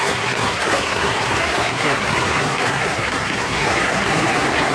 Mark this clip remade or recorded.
remade